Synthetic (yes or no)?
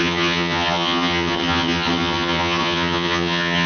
yes